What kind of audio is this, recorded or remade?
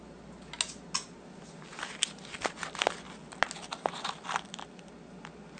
recorded